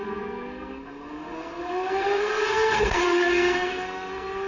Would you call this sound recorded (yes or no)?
no